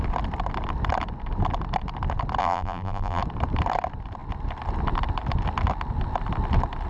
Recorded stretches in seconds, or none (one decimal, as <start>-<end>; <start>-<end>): 0.0-2.4; 3.2-6.9